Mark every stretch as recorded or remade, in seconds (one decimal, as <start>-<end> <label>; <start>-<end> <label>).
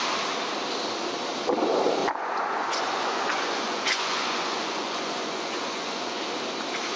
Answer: 0.0-2.0 recorded; 2.0-6.2 remade; 6.2-7.0 recorded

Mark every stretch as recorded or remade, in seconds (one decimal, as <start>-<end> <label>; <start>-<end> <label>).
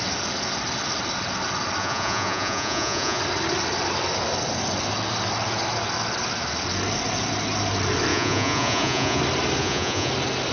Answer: 0.0-1.8 recorded; 1.8-3.2 remade; 3.2-8.1 recorded; 8.1-9.2 remade; 9.2-9.6 recorded; 9.6-10.1 remade; 10.1-10.5 recorded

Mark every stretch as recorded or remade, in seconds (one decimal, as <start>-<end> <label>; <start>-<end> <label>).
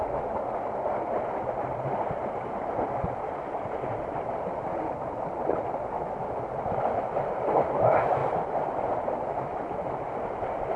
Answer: 0.0-10.8 recorded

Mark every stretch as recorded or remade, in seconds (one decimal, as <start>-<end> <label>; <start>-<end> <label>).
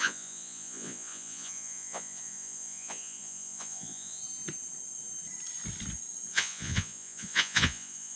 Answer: 0.0-4.2 remade; 4.2-6.3 recorded; 6.3-8.2 remade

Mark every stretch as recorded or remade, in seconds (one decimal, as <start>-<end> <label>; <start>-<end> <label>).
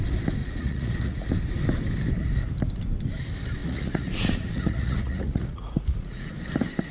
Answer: 0.0-0.4 recorded; 0.4-1.3 remade; 1.3-3.6 recorded; 3.6-6.3 remade; 6.3-6.9 recorded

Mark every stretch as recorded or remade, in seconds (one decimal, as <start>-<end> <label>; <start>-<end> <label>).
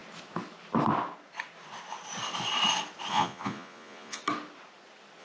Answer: 0.0-3.1 recorded; 3.1-4.2 remade; 4.2-5.2 recorded